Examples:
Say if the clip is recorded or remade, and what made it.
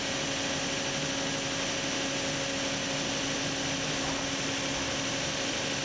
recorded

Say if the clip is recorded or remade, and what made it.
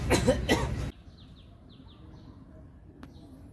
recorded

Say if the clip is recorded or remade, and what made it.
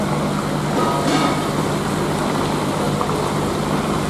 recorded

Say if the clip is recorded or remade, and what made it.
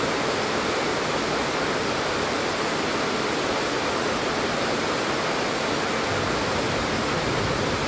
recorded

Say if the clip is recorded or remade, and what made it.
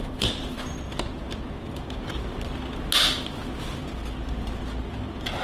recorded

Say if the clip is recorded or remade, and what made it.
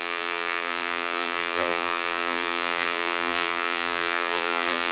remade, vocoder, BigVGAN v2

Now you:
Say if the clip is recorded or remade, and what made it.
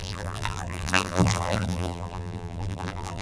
remade, vocoder, BigVGAN v2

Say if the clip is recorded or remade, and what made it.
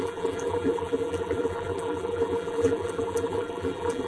remade, vocoder, BigVGAN v2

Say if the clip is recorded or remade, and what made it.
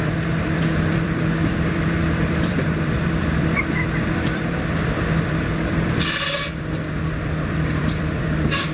remade, vocoder, BigVGAN v2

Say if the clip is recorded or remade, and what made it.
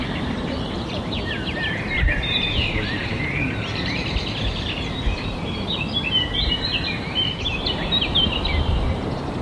remade, vocoder, BigVGAN v2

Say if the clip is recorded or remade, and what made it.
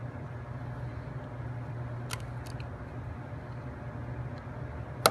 recorded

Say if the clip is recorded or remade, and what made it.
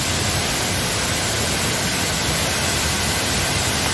recorded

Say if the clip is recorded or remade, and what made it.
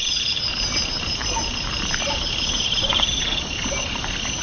remade, vocoder, BigVGAN v2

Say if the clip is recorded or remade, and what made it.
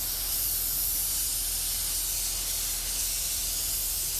recorded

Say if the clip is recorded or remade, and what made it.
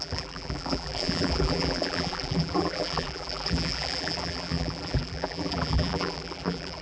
remade, vocoder, BigVGAN v2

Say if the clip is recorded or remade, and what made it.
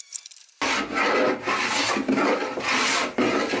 recorded